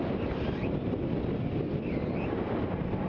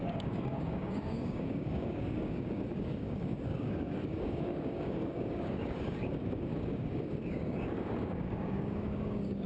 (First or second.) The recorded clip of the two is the first